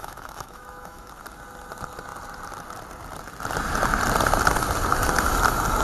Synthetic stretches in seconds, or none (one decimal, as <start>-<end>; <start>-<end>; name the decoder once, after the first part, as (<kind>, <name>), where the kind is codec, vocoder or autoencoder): 0.0-1.1 (autoencoder, DAC-VAE)